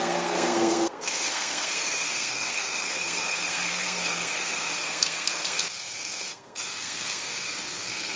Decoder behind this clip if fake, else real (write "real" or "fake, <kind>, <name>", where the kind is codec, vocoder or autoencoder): fake, codec, SNAC